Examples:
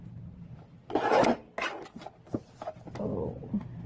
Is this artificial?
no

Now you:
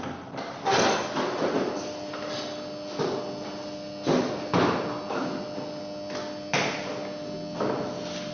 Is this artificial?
no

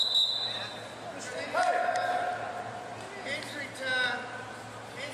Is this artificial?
no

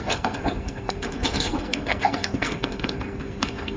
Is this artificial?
yes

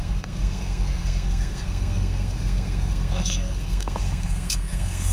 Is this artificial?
yes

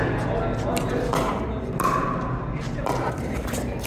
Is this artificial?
no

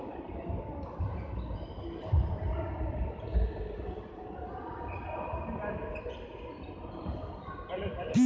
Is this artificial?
no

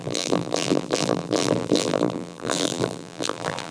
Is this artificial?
yes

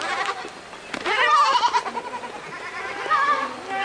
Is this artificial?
no